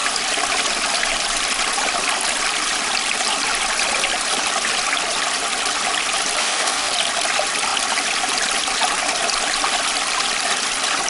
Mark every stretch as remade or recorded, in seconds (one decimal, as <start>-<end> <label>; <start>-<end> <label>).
0.0-6.4 recorded; 6.4-6.9 remade; 6.9-11.1 recorded